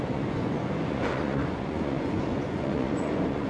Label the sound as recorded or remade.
remade